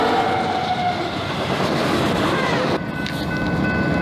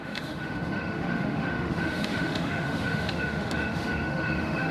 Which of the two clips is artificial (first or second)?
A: second